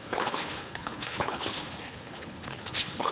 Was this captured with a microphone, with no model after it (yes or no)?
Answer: no